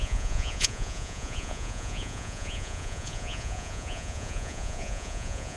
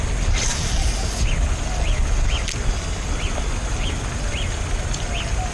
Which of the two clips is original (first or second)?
second